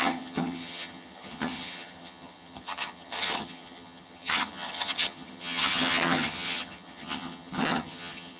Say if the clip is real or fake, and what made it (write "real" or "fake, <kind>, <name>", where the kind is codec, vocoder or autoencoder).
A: fake, vocoder, HiFi-GAN